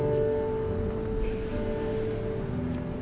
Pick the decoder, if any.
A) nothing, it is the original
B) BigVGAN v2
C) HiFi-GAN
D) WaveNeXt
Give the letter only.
A